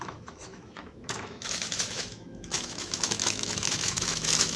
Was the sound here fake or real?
fake